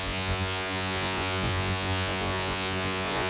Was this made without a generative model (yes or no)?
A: no